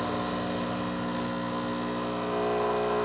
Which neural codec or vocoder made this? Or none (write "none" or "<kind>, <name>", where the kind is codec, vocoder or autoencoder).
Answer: none